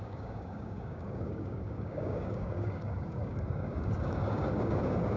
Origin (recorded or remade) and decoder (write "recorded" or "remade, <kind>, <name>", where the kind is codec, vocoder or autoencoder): remade, codec, DAC